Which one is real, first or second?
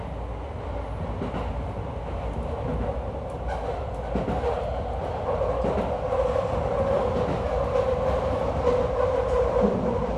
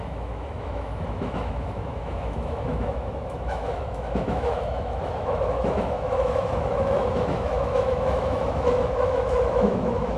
first